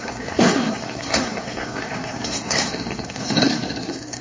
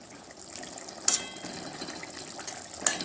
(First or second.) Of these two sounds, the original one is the second